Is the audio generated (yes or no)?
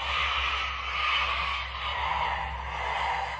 no